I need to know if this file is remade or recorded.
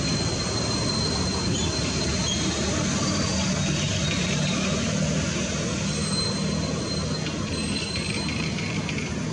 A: recorded